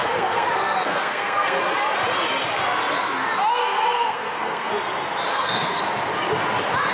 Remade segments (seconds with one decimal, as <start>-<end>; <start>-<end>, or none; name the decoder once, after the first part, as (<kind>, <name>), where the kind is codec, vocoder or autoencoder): 0.0-1.6 (codec, SNAC); 3.6-4.7; 5.3-5.8